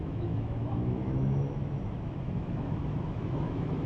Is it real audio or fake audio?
fake